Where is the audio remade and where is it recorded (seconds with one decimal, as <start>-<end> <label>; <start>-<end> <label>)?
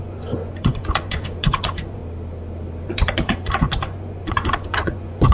0.0-2.0 remade; 2.0-2.8 recorded; 2.8-5.3 remade